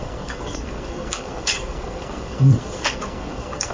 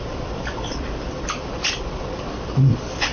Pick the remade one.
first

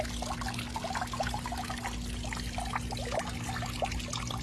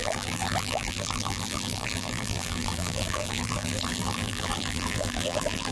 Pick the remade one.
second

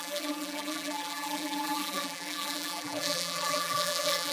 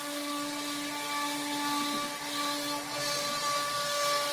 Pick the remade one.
first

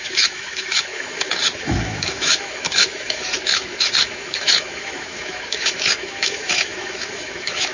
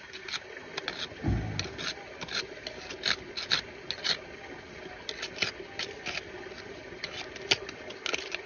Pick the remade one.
first